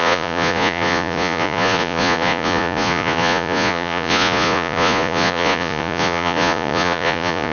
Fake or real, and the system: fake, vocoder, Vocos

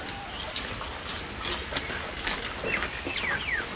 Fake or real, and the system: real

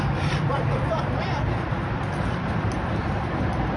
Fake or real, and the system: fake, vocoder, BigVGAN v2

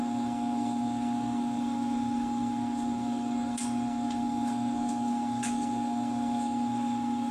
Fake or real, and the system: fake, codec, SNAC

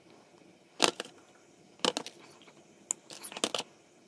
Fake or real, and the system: real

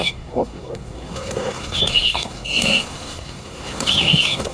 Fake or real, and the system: fake, codec, SNAC